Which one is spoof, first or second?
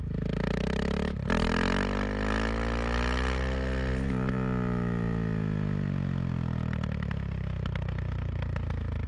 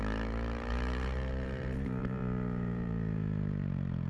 second